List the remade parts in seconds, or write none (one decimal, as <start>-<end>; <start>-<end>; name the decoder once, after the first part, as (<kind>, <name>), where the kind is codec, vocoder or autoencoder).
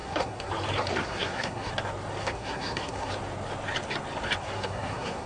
0.0-0.5 (codec, SNAC); 1.0-1.7; 2.2-3.1; 4.4-5.3